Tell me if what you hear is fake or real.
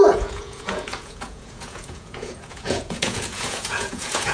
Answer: fake